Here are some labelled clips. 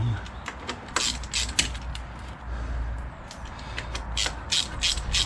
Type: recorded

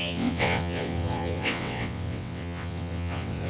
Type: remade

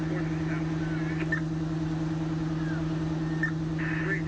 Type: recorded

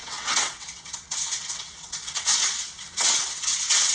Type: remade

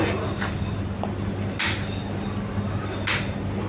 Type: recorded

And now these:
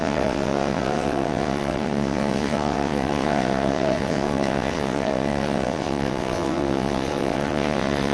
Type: remade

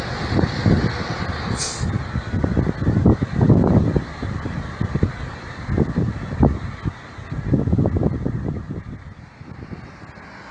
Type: recorded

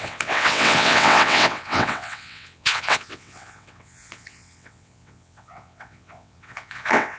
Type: remade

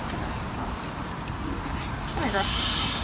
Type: recorded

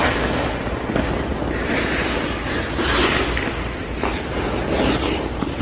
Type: recorded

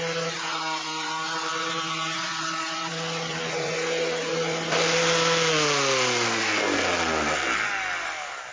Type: recorded